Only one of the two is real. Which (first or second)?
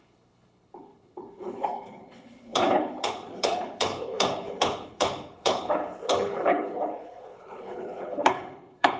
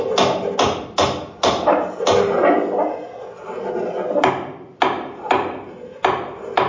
second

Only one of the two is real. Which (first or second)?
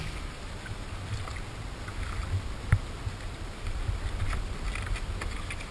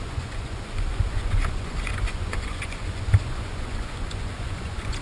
first